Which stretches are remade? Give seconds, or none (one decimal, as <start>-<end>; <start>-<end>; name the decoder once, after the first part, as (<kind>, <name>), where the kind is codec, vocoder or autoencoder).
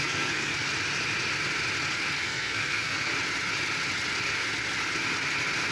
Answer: 0.0-0.5 (codec, SNAC); 2.2-3.1